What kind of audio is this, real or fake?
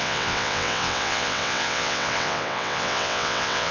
fake